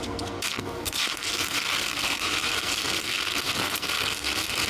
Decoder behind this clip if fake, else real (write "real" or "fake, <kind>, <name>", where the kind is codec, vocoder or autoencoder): fake, codec, SNAC